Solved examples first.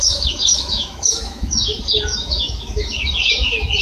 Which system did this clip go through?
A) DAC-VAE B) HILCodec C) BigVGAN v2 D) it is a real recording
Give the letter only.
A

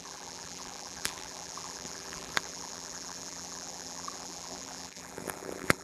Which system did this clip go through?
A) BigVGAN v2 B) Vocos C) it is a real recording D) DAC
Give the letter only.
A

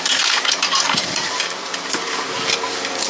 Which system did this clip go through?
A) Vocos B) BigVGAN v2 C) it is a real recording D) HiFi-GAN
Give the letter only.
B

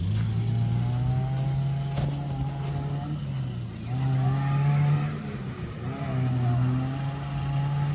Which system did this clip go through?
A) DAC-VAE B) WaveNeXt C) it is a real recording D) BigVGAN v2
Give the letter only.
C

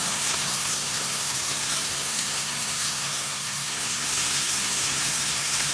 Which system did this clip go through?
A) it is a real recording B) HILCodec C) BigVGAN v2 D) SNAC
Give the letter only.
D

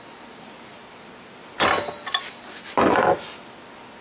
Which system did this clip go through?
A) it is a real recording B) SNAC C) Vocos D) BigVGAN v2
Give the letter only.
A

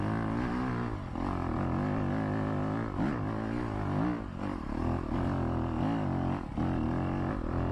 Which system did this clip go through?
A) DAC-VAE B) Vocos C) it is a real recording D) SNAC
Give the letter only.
C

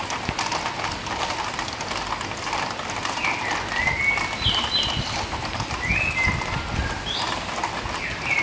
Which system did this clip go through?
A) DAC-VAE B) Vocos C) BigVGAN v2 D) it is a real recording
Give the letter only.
D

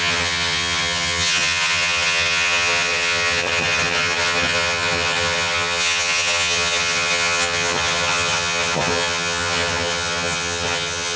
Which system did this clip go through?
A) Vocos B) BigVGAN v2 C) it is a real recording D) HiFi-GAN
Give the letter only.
D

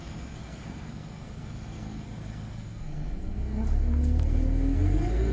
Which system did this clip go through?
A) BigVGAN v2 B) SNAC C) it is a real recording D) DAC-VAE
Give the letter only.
B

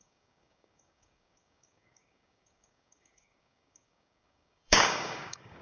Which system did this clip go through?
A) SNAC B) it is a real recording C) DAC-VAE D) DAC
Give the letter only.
D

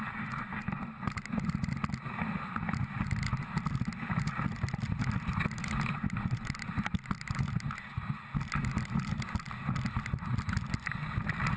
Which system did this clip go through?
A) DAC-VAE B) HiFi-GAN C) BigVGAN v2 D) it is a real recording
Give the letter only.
D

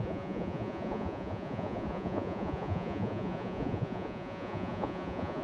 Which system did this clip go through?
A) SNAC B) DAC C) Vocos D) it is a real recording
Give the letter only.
C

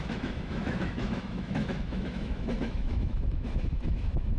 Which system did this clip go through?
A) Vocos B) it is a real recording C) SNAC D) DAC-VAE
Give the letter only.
D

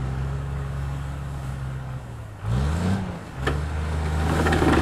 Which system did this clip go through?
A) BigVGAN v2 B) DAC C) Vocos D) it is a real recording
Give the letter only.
B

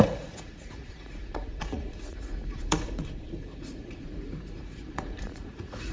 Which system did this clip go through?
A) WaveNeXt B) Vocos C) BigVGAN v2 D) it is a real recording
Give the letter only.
B